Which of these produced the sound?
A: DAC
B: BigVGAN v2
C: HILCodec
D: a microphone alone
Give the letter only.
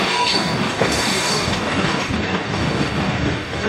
A